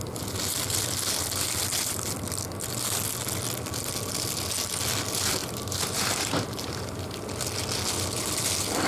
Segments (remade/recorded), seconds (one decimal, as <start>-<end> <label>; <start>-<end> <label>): 0.0-5.4 recorded; 5.4-7.2 remade; 7.2-8.9 recorded